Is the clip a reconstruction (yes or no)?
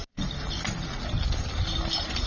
no